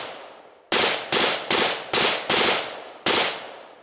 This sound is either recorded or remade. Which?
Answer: recorded